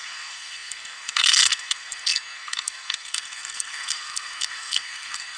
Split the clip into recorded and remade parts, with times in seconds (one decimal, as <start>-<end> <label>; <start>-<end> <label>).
0.0-5.4 remade